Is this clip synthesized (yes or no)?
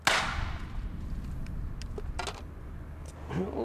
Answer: no